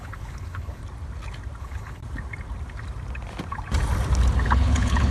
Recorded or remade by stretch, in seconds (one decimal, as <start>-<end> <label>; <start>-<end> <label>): 0.0-0.8 remade; 0.8-1.6 recorded; 1.6-2.0 remade; 2.0-4.5 recorded; 4.5-5.1 remade